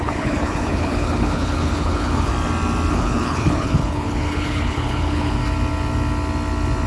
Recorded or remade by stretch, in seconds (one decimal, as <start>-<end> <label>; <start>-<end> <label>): 0.0-2.3 remade; 2.3-2.9 recorded; 2.9-5.4 remade; 5.4-6.9 recorded